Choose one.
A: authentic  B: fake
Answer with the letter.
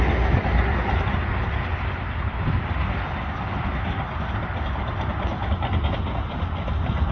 A